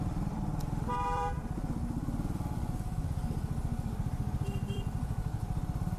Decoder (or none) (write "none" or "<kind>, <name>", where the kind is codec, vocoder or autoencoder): vocoder, BigVGAN v2